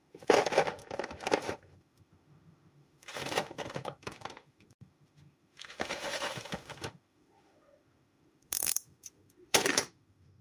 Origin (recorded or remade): remade